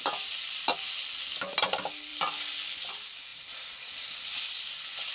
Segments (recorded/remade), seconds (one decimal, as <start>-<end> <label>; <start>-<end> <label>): 0.0-3.3 recorded; 3.3-5.1 remade